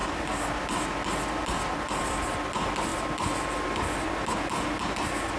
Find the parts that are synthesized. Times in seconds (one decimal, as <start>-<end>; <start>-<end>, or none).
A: none